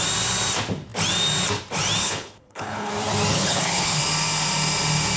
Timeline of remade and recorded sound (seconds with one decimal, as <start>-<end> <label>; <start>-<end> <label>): 0.0-2.0 recorded; 2.0-2.9 remade; 2.9-3.3 recorded; 3.3-4.0 remade; 4.0-5.2 recorded